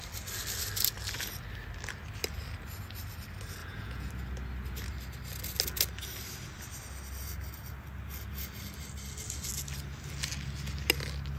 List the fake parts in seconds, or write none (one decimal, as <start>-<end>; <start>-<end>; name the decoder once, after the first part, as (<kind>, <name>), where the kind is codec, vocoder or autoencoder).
3.6-4.1 (vocoder, Vocos)